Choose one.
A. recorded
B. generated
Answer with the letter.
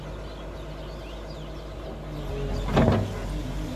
A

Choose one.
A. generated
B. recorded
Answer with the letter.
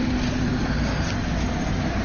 B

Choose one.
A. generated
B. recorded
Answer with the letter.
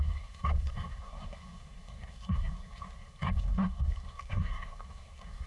A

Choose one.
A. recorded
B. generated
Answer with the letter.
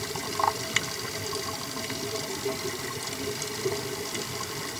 A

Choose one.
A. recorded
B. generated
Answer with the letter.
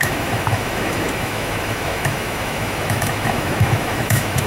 B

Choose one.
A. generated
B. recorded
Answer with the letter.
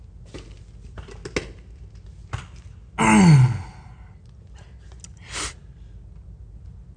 B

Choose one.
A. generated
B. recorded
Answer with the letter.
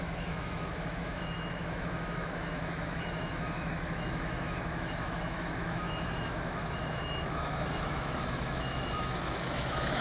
A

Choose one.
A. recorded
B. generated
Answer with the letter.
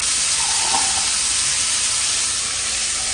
A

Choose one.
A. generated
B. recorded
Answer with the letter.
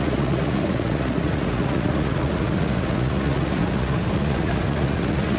A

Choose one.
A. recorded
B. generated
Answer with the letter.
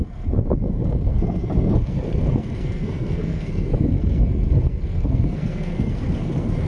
B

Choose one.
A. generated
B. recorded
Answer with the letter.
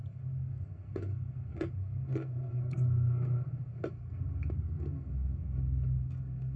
A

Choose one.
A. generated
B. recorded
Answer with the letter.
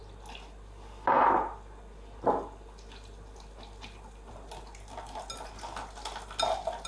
B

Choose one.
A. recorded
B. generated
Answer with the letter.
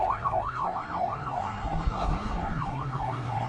B